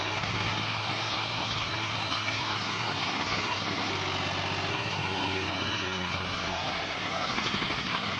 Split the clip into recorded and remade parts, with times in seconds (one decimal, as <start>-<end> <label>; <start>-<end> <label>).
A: 0.0-3.9 remade; 3.9-4.7 recorded; 4.7-8.2 remade

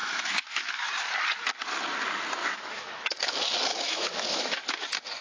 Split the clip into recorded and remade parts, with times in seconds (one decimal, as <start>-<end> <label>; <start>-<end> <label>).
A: 0.0-0.9 remade; 0.9-2.4 recorded; 2.4-3.3 remade; 3.3-3.7 recorded; 3.7-4.8 remade; 4.8-5.2 recorded

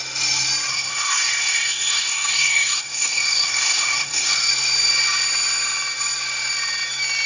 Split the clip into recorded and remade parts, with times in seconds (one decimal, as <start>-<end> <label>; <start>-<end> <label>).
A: 0.0-0.7 recorded; 0.7-4.5 remade; 4.5-7.3 recorded

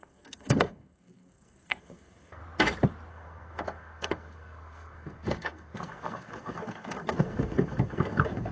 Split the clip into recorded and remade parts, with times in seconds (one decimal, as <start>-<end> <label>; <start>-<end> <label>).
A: 0.0-2.4 remade; 2.4-3.1 recorded; 3.1-8.5 remade

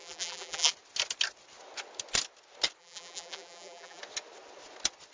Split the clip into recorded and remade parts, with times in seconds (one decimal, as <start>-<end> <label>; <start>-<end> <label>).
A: 0.0-0.7 remade; 0.7-2.8 recorded; 2.8-4.0 remade; 4.0-5.1 recorded

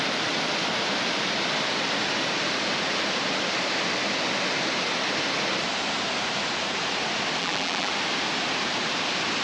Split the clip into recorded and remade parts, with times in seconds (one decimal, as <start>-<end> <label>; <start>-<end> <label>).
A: 0.0-7.4 recorded; 7.4-7.9 remade; 7.9-9.4 recorded

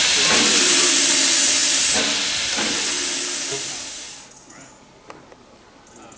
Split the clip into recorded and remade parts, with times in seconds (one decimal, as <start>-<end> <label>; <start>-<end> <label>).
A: 0.0-6.2 recorded